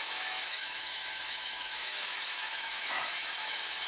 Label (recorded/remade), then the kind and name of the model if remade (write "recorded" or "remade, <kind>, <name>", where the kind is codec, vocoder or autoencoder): remade, autoencoder, DAC-VAE